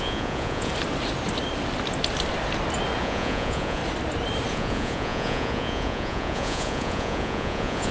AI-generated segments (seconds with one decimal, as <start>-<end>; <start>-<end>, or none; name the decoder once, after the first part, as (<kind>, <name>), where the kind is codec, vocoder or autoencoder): 0.0-0.7 (vocoder, Vocos); 3.0-3.8; 4.5-7.9